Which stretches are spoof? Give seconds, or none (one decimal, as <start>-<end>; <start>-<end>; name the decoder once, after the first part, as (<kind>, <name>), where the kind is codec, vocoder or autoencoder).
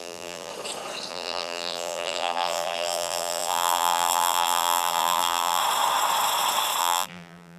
0.0-0.5 (vocoder, BigVGAN v2); 1.1-5.6; 6.8-7.6